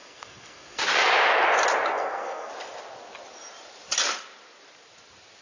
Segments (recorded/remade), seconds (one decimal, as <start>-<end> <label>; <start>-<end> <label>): 0.0-0.8 remade; 0.8-1.9 recorded; 1.9-2.5 remade; 2.5-5.4 recorded